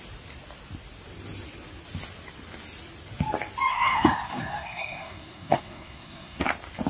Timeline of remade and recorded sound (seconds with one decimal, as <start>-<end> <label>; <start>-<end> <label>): 0.0-3.7 recorded; 3.7-6.4 remade; 6.4-6.9 recorded